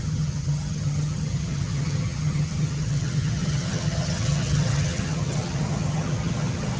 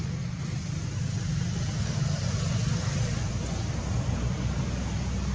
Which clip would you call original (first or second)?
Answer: second